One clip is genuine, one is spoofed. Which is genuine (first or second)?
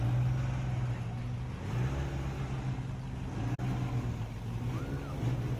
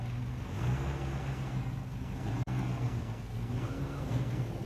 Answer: first